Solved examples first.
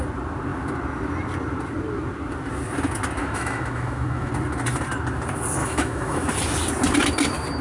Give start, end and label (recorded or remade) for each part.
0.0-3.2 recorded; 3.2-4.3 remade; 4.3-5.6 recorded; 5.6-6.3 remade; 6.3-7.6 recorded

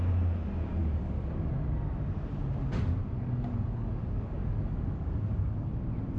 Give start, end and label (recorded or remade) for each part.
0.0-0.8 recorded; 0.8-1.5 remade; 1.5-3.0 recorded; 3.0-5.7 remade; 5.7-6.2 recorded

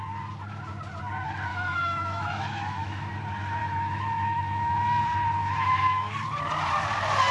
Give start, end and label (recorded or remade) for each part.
0.0-1.5 recorded; 1.5-3.1 remade; 3.1-3.6 recorded; 3.6-5.0 remade; 5.0-5.4 recorded; 5.4-6.1 remade; 6.1-7.3 recorded

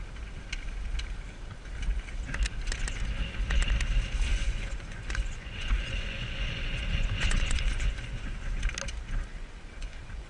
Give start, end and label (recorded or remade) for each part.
0.0-4.3 recorded; 4.3-8.6 remade; 8.6-9.3 recorded; 9.3-10.3 remade

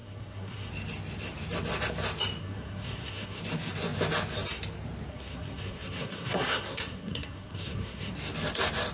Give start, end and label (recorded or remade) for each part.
0.0-0.7 remade; 0.7-2.4 recorded; 2.4-3.4 remade; 3.4-5.1 recorded; 5.1-8.1 remade; 8.1-8.9 recorded

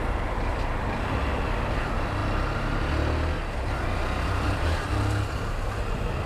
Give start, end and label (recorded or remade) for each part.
0.0-6.3 recorded

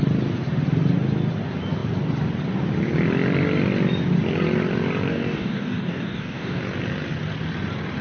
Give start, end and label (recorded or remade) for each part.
0.0-5.1 recorded; 5.1-6.6 remade; 6.6-8.0 recorded